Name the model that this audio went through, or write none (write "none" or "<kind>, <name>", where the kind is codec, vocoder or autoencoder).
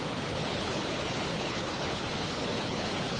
codec, HILCodec